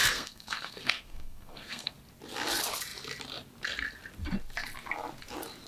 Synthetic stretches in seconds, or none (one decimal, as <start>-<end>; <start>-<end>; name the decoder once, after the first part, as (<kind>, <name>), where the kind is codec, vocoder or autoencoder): 0.0-1.9 (codec, SNAC)